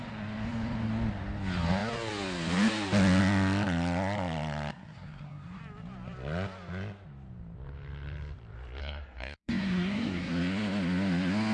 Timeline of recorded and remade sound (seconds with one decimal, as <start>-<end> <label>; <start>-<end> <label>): 0.0-4.7 recorded; 4.7-5.6 remade; 5.6-8.8 recorded; 8.8-10.3 remade; 10.3-11.5 recorded